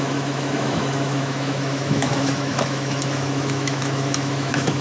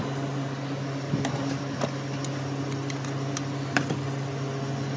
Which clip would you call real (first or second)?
second